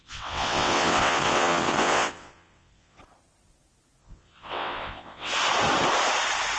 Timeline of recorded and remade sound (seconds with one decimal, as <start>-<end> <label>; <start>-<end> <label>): 0.0-3.0 remade; 3.0-4.0 recorded; 4.0-5.3 remade; 5.3-6.6 recorded